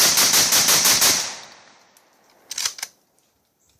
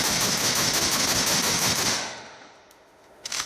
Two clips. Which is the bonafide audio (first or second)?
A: first